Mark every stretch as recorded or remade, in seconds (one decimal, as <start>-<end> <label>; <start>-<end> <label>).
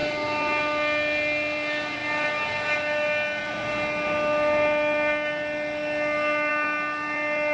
0.0-7.5 recorded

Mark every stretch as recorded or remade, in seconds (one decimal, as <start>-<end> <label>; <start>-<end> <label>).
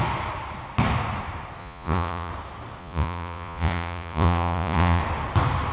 0.0-1.6 recorded; 1.6-2.3 remade; 2.3-2.8 recorded; 2.8-5.0 remade; 5.0-5.7 recorded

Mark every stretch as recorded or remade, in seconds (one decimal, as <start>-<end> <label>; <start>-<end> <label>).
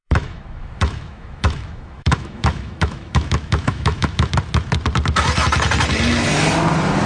0.0-4.3 remade; 4.3-7.1 recorded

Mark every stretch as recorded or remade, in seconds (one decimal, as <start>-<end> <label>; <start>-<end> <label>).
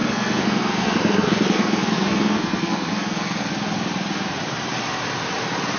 0.0-3.5 remade; 3.5-5.8 recorded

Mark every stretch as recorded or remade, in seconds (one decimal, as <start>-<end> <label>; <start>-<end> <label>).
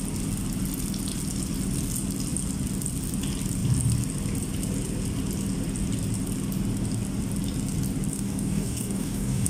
0.0-8.1 recorded; 8.1-9.5 remade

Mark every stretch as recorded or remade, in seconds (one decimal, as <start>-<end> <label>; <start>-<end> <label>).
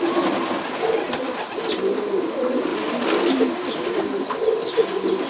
0.0-5.3 recorded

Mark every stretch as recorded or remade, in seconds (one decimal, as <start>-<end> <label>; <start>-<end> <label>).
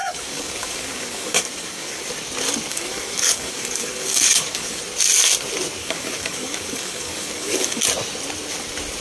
0.0-2.0 remade; 2.0-2.7 recorded; 2.7-4.8 remade; 4.8-5.8 recorded; 5.8-7.8 remade; 7.8-9.0 recorded